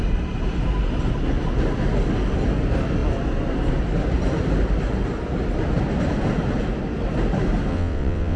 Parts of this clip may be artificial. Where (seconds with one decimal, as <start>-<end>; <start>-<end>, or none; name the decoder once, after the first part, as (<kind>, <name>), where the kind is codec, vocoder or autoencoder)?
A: 7.7-8.4 (vocoder, WaveNeXt)